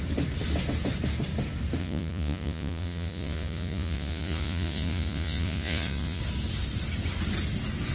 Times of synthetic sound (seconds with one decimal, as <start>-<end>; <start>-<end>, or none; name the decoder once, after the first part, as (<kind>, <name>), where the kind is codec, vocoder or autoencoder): 1.8-6.2 (vocoder, Vocos)